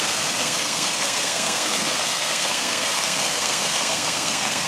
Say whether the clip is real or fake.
fake